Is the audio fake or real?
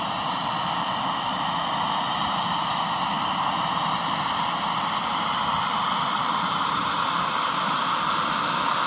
real